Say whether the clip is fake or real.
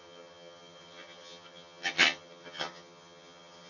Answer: fake